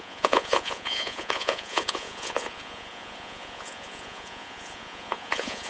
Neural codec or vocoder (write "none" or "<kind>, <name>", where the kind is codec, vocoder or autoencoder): vocoder, Vocos